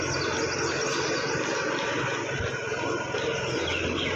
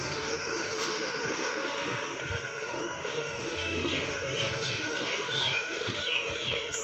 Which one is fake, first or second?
second